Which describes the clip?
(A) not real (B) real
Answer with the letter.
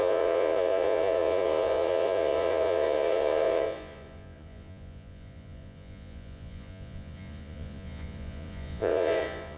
A